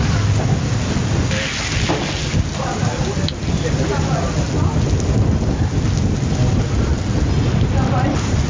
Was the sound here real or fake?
real